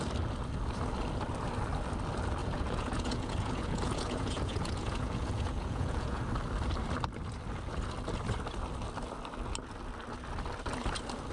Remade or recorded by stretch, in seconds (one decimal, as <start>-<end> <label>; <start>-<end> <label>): 0.0-2.4 recorded; 2.4-6.2 remade; 6.2-11.3 recorded